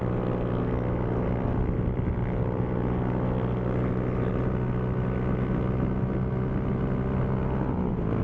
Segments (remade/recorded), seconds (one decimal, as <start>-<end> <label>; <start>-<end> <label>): 0.0-8.2 recorded